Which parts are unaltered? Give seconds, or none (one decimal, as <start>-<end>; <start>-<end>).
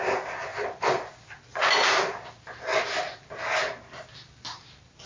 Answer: 0.0-0.5; 1.1-1.5; 2.3-5.1